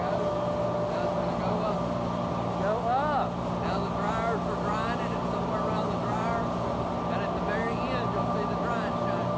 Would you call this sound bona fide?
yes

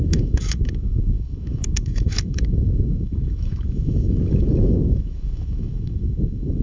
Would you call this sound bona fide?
no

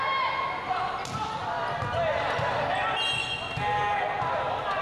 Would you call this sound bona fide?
yes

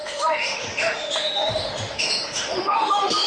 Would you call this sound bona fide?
no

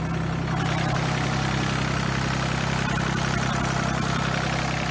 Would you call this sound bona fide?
yes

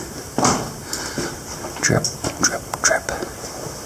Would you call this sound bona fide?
yes